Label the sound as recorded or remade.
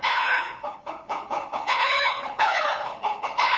remade